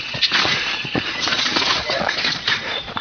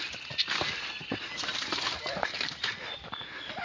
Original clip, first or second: second